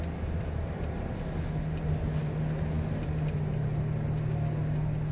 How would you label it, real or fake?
real